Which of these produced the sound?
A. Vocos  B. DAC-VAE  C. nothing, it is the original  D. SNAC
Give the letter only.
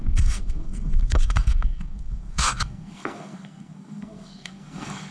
D